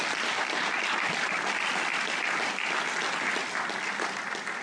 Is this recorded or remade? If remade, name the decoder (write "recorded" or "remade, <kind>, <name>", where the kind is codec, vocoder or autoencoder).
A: recorded